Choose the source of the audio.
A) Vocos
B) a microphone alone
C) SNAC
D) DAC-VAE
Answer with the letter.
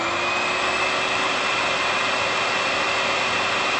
B